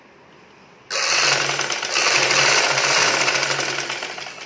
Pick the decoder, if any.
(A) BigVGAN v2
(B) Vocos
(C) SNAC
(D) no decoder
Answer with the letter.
D